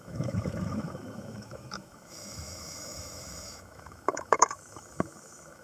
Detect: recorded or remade remade